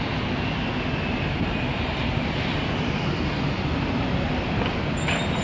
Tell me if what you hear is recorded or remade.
recorded